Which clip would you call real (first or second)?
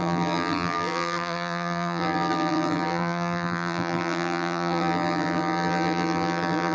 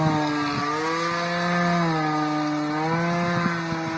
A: second